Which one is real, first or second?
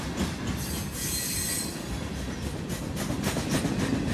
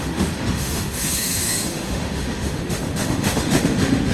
first